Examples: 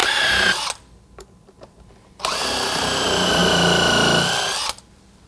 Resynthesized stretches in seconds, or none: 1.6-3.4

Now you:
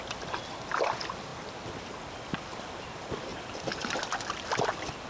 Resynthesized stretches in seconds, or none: 3.3-4.0

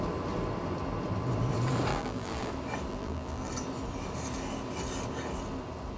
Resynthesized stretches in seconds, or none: 1.9-2.5; 2.9-3.5

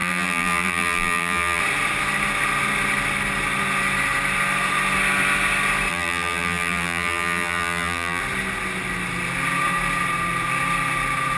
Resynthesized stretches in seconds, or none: 0.0-1.6; 5.9-8.2

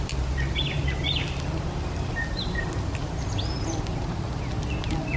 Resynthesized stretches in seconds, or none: 0.8-3.9